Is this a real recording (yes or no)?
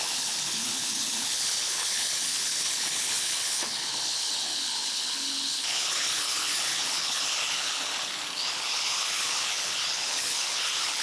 no